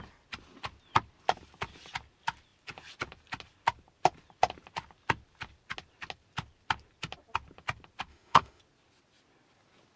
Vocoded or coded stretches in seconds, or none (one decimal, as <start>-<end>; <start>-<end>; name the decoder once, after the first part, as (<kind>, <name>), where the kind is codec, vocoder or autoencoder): 8.1-8.6 (autoencoder, DAC-VAE)